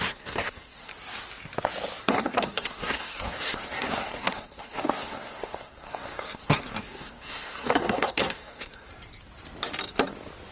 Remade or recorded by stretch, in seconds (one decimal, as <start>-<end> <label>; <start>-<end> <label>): 0.0-0.9 remade; 0.9-2.0 recorded; 2.0-8.9 remade; 8.9-10.5 recorded